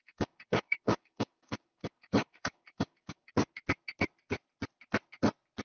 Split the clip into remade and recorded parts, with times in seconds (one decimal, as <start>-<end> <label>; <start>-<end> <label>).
0.0-3.3 remade; 3.3-5.6 recorded